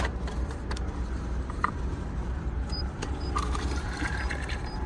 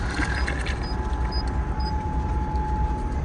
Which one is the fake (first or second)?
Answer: first